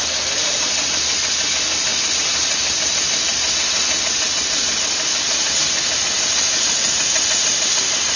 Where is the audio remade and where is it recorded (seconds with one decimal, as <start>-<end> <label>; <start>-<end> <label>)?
0.0-8.2 recorded

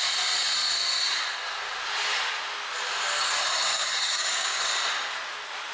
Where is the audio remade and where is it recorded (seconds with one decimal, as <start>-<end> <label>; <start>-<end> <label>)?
0.0-3.7 recorded; 3.7-4.6 remade; 4.6-5.7 recorded